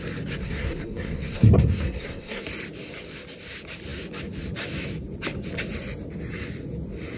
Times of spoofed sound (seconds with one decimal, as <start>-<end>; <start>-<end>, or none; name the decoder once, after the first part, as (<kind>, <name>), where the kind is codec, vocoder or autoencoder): 0.4-2.4 (codec, SNAC)